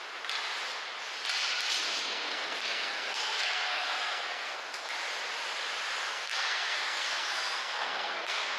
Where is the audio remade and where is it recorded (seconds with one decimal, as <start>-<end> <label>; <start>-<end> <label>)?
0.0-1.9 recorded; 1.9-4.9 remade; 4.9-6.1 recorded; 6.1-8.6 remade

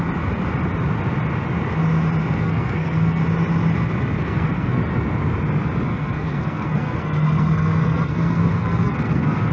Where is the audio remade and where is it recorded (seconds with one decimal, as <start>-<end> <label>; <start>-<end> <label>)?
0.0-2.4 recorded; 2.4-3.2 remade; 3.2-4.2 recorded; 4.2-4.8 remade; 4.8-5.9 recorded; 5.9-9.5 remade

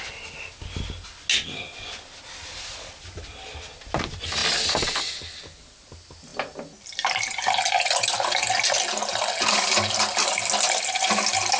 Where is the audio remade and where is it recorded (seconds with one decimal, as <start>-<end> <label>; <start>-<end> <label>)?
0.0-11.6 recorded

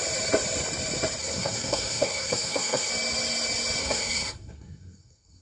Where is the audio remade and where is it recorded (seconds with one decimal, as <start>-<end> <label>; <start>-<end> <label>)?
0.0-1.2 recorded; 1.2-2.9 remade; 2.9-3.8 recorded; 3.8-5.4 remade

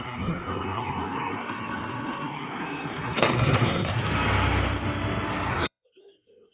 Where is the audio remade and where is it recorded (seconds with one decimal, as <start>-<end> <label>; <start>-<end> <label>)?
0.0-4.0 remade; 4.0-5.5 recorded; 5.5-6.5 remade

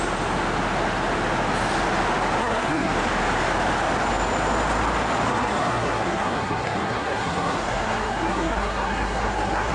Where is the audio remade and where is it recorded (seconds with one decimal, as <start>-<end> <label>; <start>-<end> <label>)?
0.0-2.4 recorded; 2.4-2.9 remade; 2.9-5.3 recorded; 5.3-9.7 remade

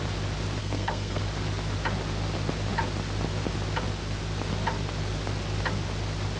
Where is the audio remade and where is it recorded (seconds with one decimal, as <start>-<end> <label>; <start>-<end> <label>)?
0.0-0.6 recorded; 0.6-1.2 remade; 1.2-6.4 recorded

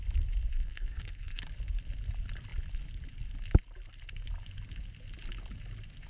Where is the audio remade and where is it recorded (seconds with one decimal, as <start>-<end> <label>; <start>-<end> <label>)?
0.0-0.5 recorded; 0.5-1.4 remade; 1.4-6.1 recorded